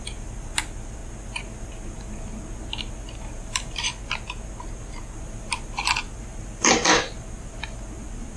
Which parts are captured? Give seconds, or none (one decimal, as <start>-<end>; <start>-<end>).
1.0-3.3; 3.9-5.2

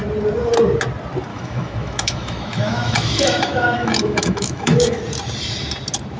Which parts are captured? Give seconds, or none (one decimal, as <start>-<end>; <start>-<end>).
0.0-1.3; 5.0-6.2

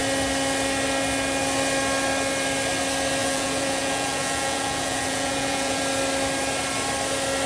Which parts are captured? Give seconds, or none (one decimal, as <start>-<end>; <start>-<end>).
0.0-3.2; 5.8-7.5

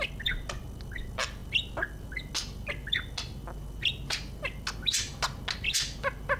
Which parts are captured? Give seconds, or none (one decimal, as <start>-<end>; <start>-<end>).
0.0-6.4

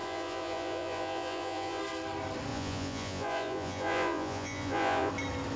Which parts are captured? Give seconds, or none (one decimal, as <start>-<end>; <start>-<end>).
1.8-2.5; 5.1-5.6

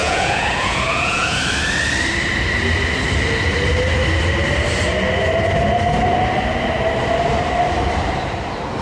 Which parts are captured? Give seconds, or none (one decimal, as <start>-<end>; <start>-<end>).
1.4-8.8

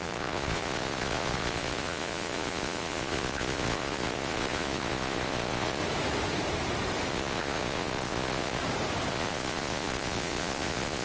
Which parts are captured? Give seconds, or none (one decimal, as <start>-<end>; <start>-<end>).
5.8-7.1; 8.6-9.1